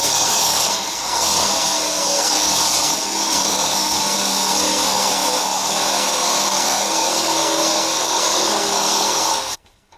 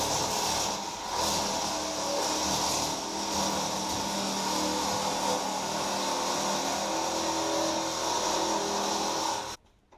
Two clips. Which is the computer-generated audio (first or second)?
first